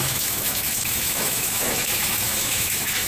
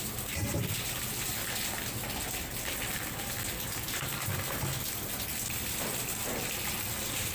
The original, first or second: second